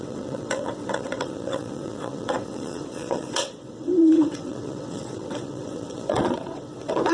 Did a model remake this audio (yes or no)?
yes